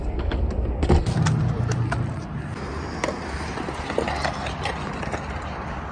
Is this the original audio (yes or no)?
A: yes